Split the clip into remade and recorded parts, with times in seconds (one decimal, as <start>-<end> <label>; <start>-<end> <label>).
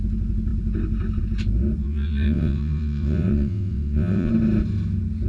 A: 0.0-1.8 recorded; 1.8-4.3 remade; 4.3-5.3 recorded